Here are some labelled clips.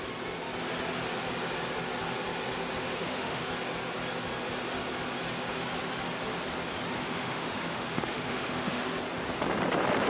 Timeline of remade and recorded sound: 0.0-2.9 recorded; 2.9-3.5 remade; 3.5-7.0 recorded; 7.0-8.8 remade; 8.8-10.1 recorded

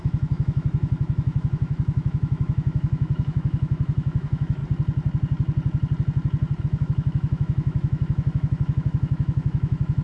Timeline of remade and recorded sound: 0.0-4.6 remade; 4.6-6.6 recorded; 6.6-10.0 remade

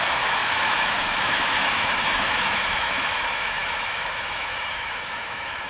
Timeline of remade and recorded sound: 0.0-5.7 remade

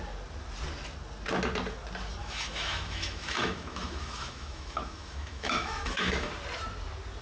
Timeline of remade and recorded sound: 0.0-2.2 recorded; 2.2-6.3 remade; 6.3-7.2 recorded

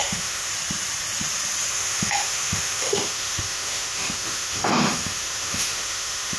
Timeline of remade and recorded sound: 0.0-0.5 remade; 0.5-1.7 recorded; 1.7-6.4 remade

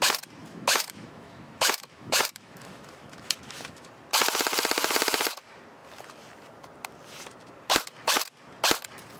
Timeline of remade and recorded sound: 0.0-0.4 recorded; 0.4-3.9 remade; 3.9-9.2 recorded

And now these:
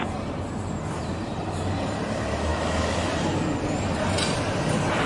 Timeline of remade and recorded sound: 0.0-2.5 recorded; 2.5-3.1 remade; 3.1-5.1 recorded